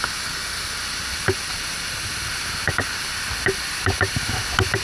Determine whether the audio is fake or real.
real